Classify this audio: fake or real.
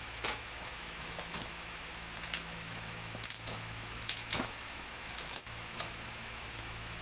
fake